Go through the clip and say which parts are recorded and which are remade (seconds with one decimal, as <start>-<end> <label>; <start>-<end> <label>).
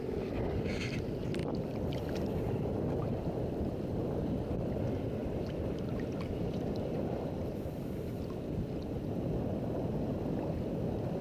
0.0-1.4 recorded; 1.4-4.8 remade; 4.8-5.2 recorded; 5.2-8.9 remade; 8.9-11.2 recorded